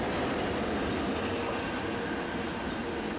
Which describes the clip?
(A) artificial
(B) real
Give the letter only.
B